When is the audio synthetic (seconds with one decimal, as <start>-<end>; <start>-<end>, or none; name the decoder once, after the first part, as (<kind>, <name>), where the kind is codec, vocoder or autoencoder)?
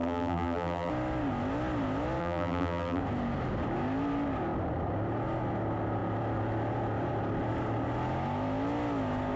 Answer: 0.0-0.9 (vocoder, BigVGAN v2); 2.2-3.0